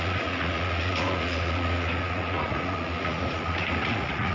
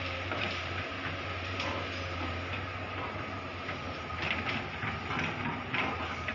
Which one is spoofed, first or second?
first